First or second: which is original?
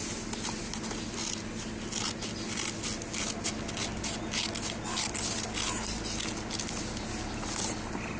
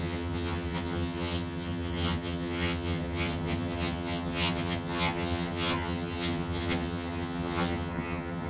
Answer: first